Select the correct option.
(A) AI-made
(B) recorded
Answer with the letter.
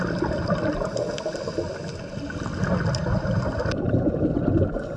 B